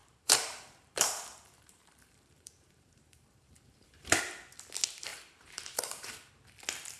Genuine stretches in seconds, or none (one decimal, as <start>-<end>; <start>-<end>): 4.2-5.1; 6.3-7.0